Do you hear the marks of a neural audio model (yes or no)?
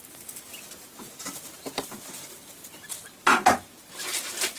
no